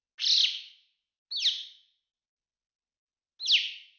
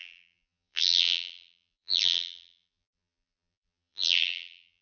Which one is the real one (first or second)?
first